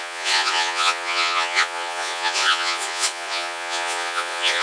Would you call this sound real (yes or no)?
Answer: no